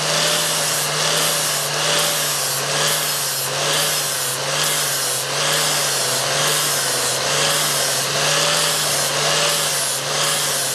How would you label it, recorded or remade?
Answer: recorded